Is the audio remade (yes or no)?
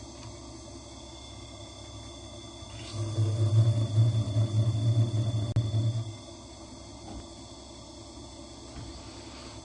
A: no